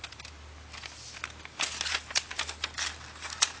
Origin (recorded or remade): recorded